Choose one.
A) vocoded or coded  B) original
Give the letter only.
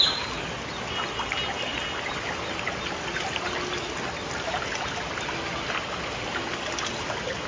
B